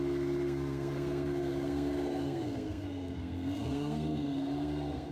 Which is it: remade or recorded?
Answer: remade